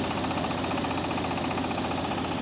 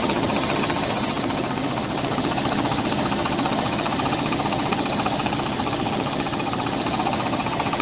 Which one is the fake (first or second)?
second